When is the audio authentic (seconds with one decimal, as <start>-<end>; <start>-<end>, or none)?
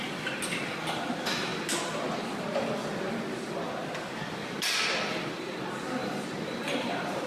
0.0-6.0